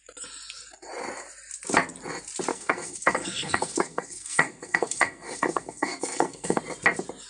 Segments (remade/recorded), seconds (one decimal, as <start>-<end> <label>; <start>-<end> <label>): 0.0-2.5 recorded; 2.5-6.6 remade; 6.6-7.3 recorded